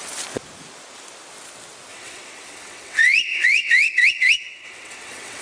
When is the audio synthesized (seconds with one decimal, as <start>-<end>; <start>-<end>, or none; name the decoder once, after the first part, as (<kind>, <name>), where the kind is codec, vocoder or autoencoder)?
1.9-5.4 (vocoder, WaveNeXt)